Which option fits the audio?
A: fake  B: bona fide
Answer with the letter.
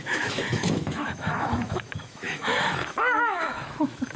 A